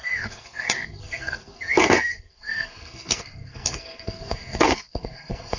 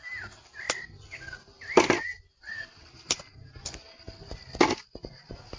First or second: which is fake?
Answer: first